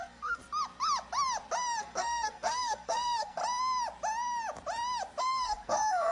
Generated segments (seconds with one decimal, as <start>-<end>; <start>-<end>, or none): 0.0-0.4; 1.8-3.4; 5.2-6.1